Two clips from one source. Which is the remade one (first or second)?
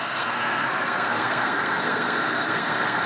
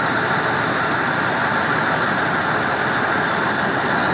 first